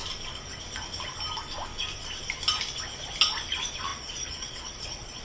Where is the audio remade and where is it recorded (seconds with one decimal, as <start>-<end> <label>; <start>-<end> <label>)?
0.0-3.9 recorded; 3.9-5.2 remade